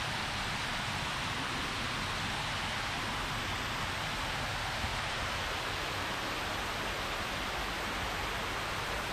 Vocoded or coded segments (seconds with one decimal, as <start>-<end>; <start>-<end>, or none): none